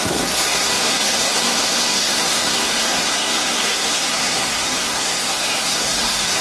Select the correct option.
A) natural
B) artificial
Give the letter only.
B